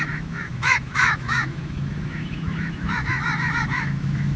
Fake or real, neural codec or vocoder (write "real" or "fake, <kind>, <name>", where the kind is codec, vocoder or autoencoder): fake, autoencoder, DAC-VAE